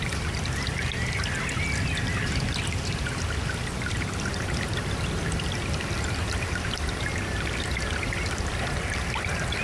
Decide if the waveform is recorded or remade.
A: recorded